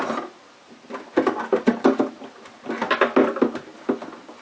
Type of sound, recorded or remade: recorded